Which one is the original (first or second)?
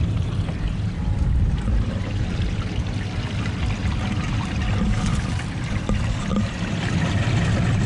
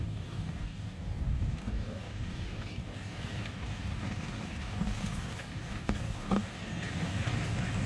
first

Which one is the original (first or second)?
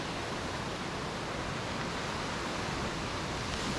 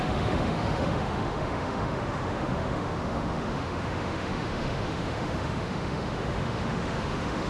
first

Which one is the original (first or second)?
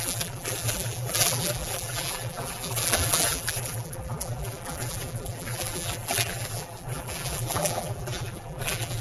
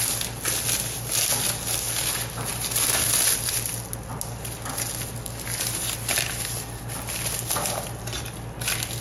second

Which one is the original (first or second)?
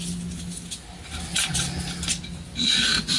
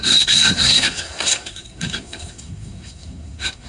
first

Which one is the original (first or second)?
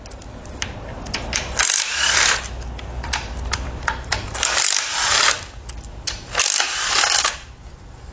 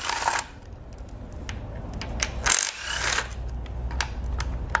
second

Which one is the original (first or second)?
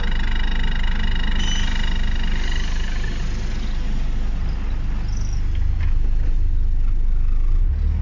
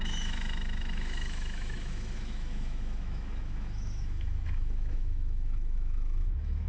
first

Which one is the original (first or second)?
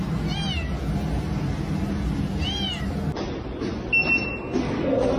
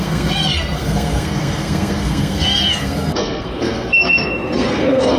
first